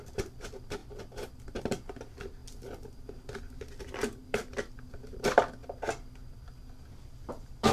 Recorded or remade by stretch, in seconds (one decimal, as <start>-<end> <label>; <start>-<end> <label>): 0.0-2.4 remade; 2.4-3.8 recorded; 3.8-5.6 remade; 5.6-6.8 recorded; 6.8-7.7 remade